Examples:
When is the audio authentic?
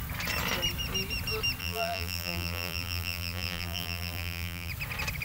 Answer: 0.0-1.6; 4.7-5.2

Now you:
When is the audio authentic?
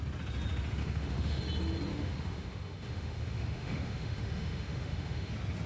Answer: 0.0-0.8; 1.4-1.9; 5.3-5.7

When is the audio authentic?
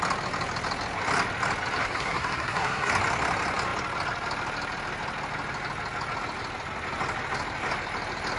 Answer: 0.0-1.8; 2.9-8.4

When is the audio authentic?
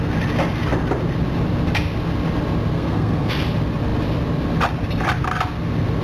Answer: 0.0-2.7; 3.3-6.0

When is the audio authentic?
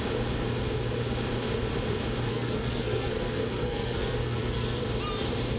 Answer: 0.0-2.3; 4.8-5.6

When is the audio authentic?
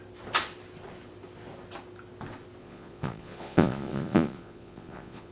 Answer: 0.0-2.6